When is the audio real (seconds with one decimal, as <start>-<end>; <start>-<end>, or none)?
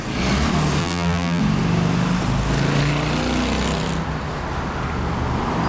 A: 0.0-0.8; 1.4-5.7